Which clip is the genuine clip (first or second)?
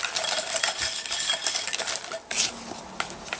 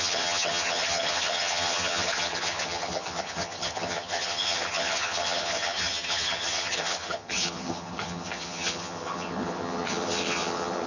first